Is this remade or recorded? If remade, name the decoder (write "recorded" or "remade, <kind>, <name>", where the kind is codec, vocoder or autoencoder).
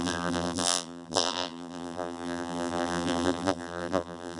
remade, vocoder, BigVGAN v2